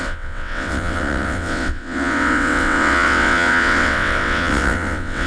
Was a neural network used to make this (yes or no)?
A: yes